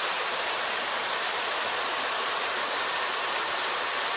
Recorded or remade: remade